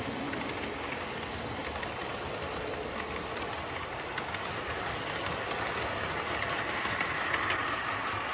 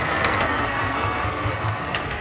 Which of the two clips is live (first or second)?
first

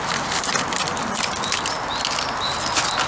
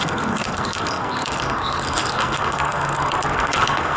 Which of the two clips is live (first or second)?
first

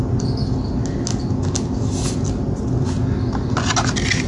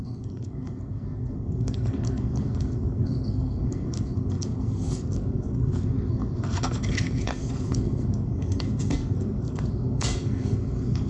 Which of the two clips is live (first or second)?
first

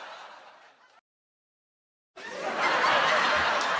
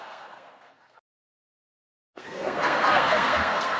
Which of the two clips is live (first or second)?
first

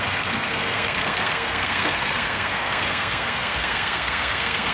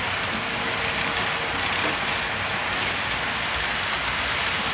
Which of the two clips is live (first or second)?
second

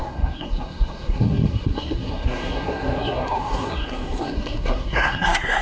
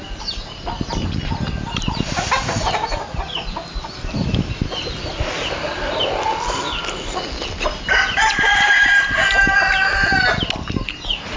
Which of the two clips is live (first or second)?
second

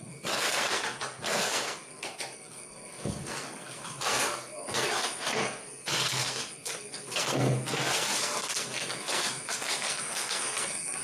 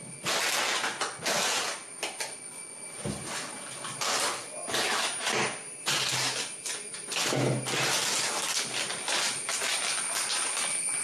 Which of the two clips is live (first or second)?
second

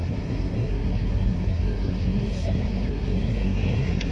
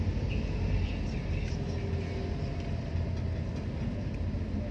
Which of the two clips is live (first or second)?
second